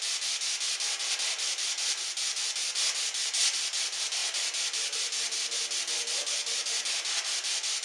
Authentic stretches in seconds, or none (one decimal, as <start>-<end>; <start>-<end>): 0.0-7.8